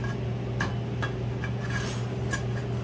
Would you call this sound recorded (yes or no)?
yes